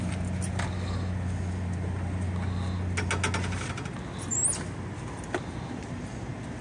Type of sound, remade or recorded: recorded